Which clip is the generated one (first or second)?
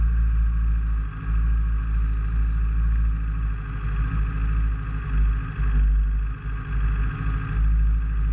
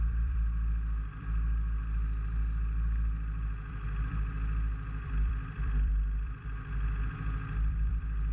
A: second